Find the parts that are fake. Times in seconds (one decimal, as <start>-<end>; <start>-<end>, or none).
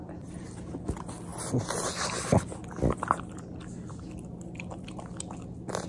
none